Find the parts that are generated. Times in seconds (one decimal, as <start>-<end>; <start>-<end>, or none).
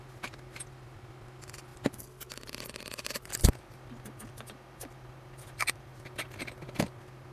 none